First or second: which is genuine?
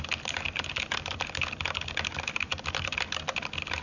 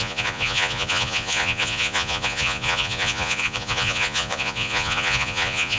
first